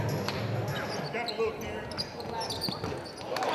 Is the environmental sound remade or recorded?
recorded